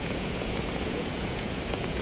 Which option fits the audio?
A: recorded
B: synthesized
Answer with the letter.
B